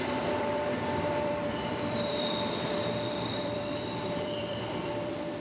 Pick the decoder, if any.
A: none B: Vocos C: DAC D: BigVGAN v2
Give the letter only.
D